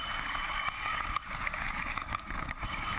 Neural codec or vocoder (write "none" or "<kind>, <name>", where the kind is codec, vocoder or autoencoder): codec, DAC